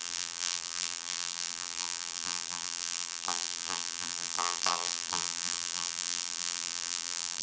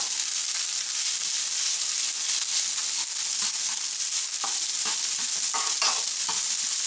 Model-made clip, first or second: first